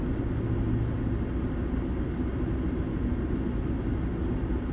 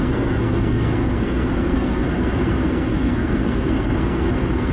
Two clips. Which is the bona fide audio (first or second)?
first